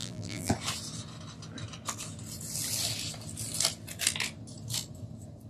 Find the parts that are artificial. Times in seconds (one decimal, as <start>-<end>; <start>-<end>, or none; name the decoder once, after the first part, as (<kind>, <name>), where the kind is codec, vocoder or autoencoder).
0.0-0.5 (vocoder, BigVGAN v2)